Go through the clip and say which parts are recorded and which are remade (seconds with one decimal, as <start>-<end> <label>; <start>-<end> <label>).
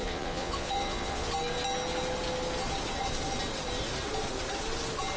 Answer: 0.0-1.3 remade; 1.3-5.2 recorded